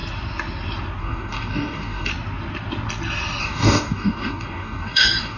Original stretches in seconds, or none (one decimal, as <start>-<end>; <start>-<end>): 0.0-1.0; 2.1-3.4

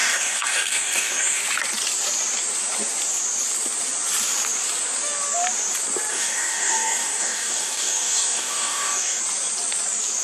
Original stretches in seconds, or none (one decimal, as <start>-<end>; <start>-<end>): 1.4-6.1; 9.2-10.2

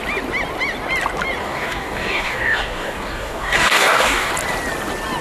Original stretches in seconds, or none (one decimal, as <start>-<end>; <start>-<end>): 0.0-1.4; 4.3-5.2

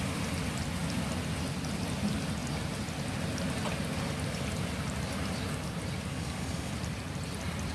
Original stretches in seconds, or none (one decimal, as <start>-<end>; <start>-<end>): 0.0-6.1; 6.7-7.7